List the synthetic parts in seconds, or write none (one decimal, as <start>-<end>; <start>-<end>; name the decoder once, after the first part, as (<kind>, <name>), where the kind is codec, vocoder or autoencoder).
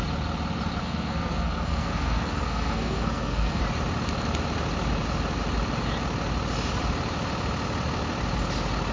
0.8-3.6 (codec, SNAC)